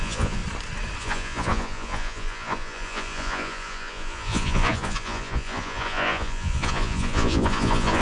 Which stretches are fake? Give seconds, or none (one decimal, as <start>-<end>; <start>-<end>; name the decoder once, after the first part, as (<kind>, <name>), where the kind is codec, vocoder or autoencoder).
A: 0.0-0.4 (vocoder, Vocos); 1.0-8.0